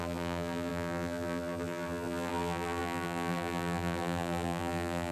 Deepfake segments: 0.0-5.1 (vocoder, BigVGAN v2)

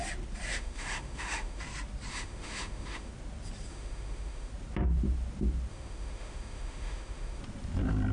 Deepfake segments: 0.5-1.6 (autoencoder, DAC-VAE); 2.1-3.1; 3.7-4.5; 5.7-7.4

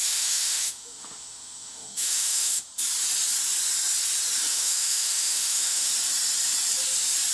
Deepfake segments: 0.0-2.6 (autoencoder, DAC-VAE); 4.5-5.9

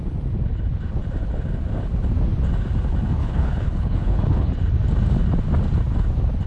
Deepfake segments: 3.2-4.5 (codec, HILCodec)

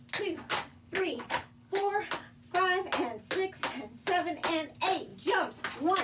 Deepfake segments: 0.7-1.9 (codec, HILCodec)

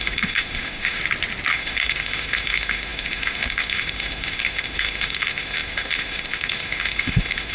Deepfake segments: 0.0-1.0 (autoencoder, DAC-VAE); 1.5-7.5

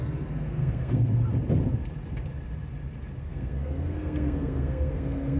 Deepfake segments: 0.0-1.2 (codec, SNAC); 3.2-5.4